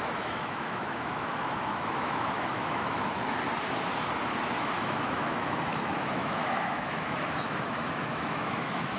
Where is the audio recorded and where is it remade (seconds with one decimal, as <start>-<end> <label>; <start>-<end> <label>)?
0.0-3.2 remade; 3.2-4.6 recorded; 4.6-9.0 remade